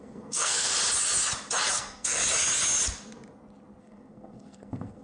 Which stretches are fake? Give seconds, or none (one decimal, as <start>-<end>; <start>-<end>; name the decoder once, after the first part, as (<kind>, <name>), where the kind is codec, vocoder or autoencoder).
0.0-0.7 (codec, SNAC); 1.7-2.2; 3.8-5.0

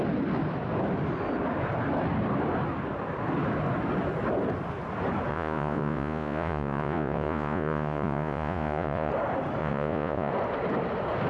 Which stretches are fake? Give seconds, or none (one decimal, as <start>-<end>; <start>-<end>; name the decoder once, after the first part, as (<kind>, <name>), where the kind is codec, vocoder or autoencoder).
5.3-9.1 (vocoder, Vocos); 9.6-10.3